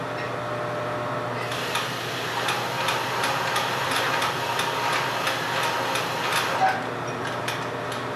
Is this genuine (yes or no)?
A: yes